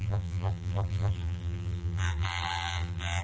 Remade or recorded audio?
remade